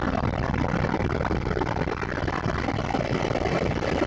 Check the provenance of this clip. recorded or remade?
recorded